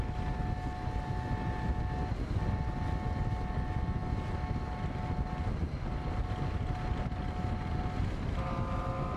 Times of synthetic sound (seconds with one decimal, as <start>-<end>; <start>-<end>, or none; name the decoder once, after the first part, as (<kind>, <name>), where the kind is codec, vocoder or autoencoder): none